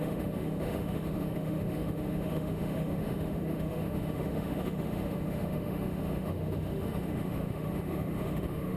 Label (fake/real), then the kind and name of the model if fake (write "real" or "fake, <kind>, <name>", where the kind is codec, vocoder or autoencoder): fake, autoencoder, DAC-VAE